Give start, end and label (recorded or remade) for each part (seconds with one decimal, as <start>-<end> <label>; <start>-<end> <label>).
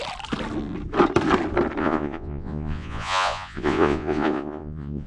0.0-1.8 recorded; 1.8-5.1 remade